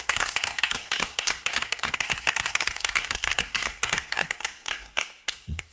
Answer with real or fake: fake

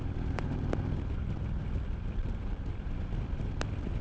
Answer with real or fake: real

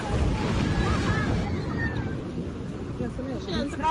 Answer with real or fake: real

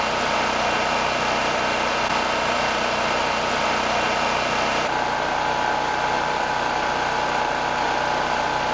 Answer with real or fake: real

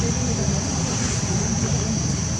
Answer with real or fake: real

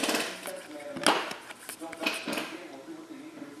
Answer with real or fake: real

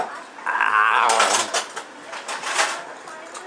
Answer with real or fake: real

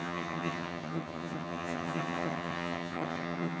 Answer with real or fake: fake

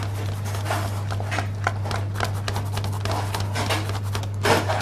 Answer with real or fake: real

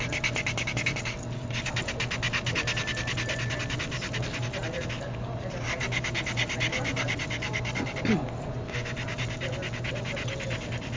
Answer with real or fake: real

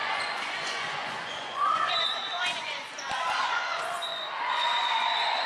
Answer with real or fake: fake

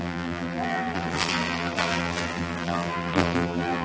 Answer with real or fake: fake